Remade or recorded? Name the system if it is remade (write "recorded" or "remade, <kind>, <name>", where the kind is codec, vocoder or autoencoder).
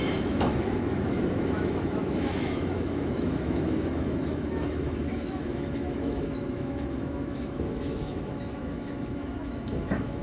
remade, autoencoder, DAC-VAE